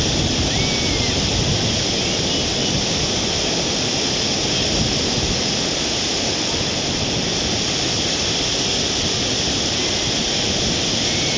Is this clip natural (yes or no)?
yes